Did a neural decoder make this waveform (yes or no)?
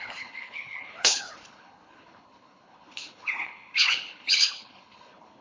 yes